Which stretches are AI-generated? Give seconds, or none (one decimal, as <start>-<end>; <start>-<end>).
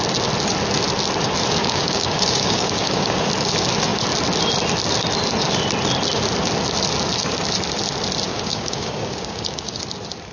1.6-3.3; 8.3-9.8